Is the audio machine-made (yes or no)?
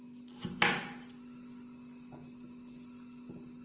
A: no